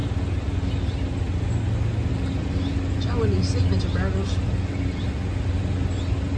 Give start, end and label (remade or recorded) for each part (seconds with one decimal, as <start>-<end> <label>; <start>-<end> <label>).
0.0-6.4 recorded